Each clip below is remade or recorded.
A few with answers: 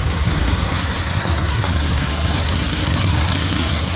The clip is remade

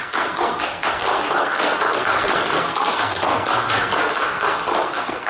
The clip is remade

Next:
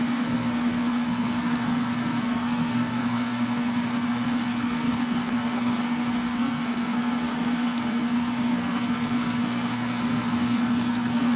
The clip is remade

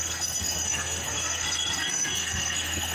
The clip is remade